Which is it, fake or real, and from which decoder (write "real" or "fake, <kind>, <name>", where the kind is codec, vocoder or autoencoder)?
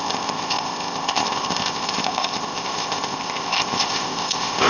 fake, codec, ZipCodec